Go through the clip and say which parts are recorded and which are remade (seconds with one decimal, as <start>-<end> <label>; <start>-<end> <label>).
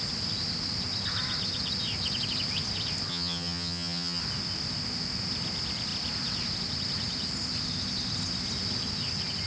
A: 0.0-3.1 recorded; 3.1-4.2 remade; 4.2-9.5 recorded